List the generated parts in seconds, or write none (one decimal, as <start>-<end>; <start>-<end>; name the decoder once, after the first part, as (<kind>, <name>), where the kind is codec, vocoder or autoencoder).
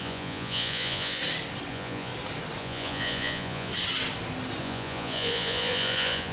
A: 0.0-1.2 (vocoder, Vocos); 1.7-2.1; 2.6-3.7; 4.6-6.3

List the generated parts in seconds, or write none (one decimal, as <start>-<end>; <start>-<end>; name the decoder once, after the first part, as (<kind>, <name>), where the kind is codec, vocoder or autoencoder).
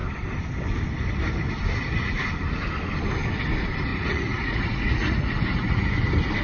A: 3.9-5.9 (vocoder, Vocos)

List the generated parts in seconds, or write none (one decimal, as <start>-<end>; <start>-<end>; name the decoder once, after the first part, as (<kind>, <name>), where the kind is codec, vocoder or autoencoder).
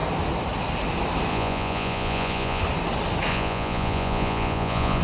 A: 1.3-2.6 (vocoder, Vocos); 3.3-5.0